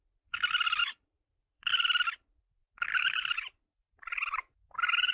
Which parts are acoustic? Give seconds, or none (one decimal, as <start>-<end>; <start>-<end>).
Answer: 0.0-0.8; 1.7-2.9; 4.6-5.1